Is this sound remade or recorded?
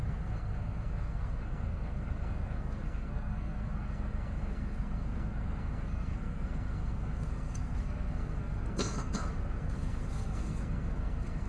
remade